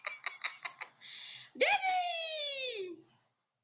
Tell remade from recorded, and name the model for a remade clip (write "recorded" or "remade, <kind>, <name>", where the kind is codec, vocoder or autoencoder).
recorded